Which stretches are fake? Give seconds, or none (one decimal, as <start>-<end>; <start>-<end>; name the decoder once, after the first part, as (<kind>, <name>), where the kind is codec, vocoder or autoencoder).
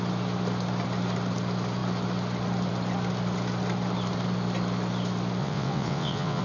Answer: 5.4-6.4 (vocoder, WaveNeXt)